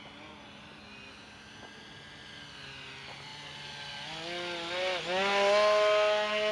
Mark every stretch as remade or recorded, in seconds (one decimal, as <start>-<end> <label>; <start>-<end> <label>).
0.0-6.5 recorded